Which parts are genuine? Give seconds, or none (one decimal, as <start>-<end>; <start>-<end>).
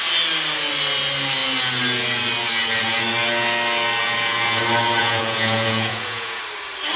0.0-4.0; 4.6-5.0; 6.4-7.0